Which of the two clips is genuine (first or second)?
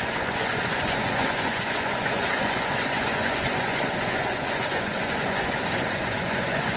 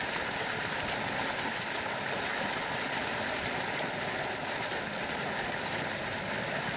second